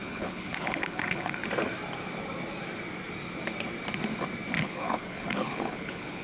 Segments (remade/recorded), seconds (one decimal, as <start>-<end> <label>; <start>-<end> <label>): 0.0-1.4 remade; 1.4-4.6 recorded; 4.6-6.2 remade